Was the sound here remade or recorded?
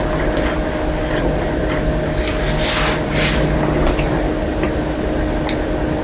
recorded